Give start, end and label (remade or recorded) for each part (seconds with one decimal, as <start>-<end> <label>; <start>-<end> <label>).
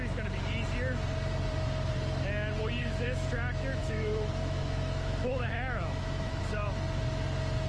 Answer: 0.0-2.8 recorded; 2.8-3.3 remade; 3.3-3.8 recorded; 3.8-6.4 remade; 6.4-7.7 recorded